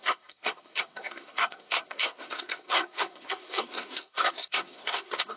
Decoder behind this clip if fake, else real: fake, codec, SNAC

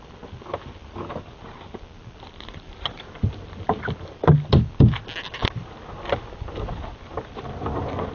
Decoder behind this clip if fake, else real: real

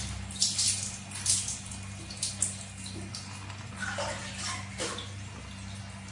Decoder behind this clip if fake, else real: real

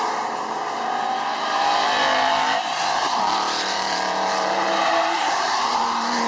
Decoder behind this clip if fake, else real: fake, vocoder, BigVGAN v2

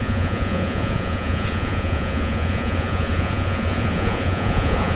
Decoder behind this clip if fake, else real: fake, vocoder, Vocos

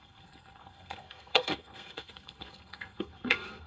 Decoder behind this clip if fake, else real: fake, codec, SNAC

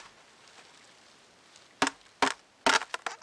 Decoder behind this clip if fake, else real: real